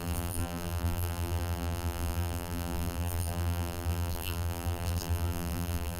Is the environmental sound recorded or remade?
remade